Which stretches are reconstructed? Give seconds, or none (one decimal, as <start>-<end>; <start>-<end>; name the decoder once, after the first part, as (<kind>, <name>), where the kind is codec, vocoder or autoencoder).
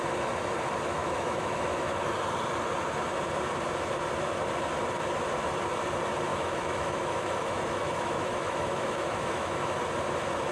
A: 1.0-2.0 (autoencoder, DAC-VAE); 6.3-9.8